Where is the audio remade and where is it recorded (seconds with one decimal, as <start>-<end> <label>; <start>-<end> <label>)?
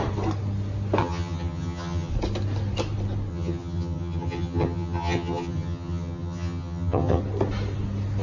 0.0-1.0 recorded; 1.0-2.1 remade; 2.1-3.3 recorded; 3.3-7.2 remade; 7.2-8.2 recorded